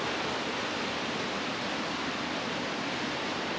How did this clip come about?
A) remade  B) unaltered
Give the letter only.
B